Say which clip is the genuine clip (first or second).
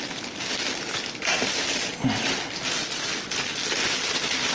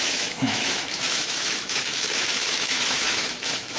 first